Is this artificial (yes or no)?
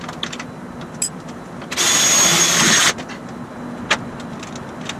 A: no